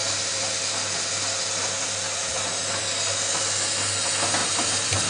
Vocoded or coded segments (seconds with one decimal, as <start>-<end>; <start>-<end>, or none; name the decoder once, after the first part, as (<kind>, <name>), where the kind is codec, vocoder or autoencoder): 4.4-5.1 (vocoder, BigVGAN v2)